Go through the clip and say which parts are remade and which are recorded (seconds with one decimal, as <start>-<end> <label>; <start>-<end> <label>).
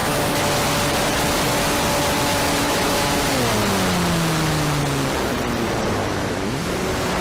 0.0-0.5 remade; 0.5-2.5 recorded; 2.5-3.3 remade; 3.3-6.0 recorded; 6.0-6.6 remade; 6.6-7.2 recorded